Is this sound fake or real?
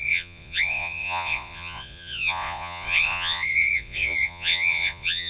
fake